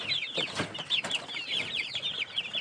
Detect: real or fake real